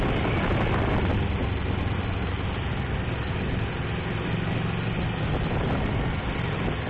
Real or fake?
real